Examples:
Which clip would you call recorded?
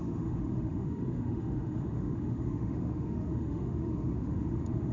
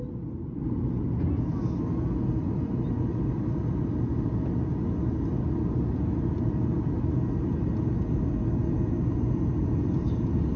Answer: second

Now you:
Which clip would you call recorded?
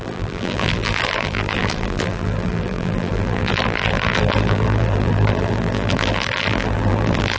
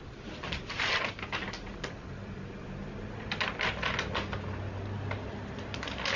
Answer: second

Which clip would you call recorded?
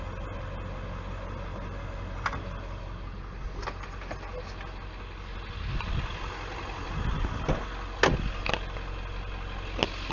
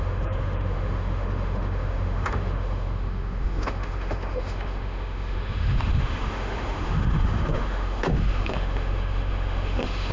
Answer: first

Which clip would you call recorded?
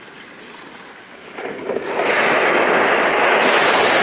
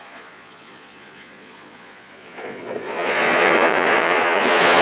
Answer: first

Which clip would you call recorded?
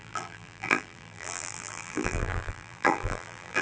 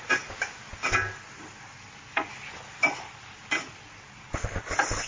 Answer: second